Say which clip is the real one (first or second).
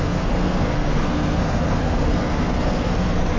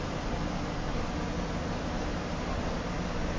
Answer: second